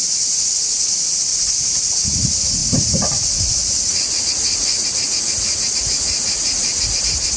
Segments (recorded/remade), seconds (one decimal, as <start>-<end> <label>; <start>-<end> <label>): 0.0-1.3 remade; 1.3-1.9 recorded; 1.9-7.4 remade